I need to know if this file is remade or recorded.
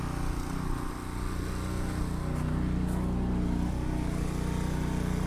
recorded